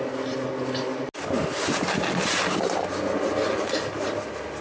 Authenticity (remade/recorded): recorded